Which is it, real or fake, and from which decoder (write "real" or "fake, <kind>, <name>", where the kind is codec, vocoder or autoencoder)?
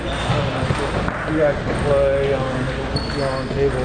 real